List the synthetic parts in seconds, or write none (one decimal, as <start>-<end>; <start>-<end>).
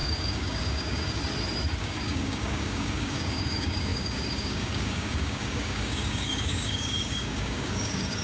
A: 0.0-1.2; 1.8-8.2